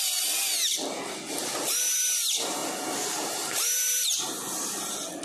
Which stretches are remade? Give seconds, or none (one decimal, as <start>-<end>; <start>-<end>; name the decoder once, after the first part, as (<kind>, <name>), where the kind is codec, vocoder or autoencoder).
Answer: none